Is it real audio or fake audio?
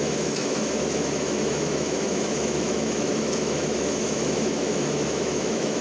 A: fake